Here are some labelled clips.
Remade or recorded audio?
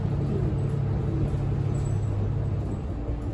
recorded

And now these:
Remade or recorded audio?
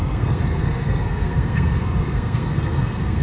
remade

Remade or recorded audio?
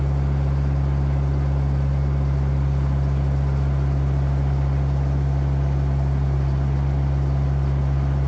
recorded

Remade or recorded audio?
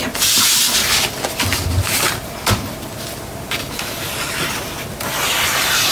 recorded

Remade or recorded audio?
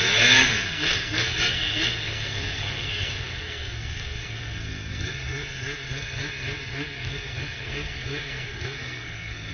remade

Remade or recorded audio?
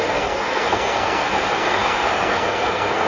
remade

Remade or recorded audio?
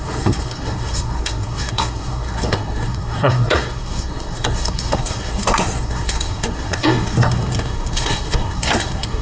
remade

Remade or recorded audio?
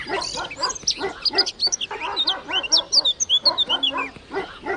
recorded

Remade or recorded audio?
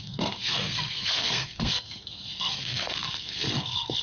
remade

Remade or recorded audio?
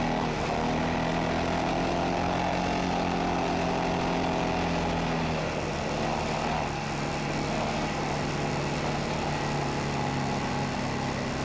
recorded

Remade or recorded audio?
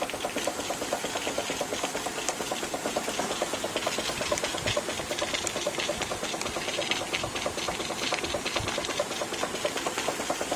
recorded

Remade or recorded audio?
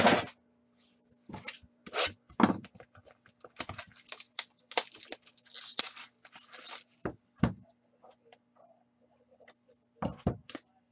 recorded